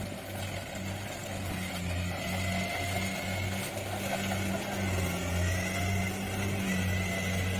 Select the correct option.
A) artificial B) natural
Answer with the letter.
B